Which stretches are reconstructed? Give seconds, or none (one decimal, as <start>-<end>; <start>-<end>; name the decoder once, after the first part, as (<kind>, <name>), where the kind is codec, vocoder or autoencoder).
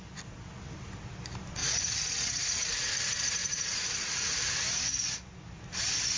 1.6-2.9 (vocoder, Vocos); 3.4-4.5